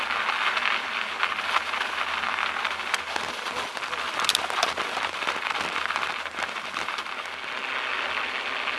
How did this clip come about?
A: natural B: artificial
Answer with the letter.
A